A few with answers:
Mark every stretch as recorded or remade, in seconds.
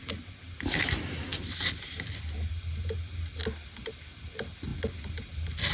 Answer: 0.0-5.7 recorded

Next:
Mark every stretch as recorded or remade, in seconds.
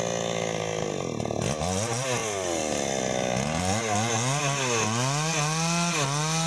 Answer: 0.0-6.5 recorded